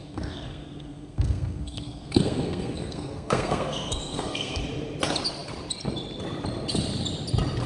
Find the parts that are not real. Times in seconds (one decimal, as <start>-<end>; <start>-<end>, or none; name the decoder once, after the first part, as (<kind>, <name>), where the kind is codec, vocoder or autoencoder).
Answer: 0.0-4.6 (codec, SNAC)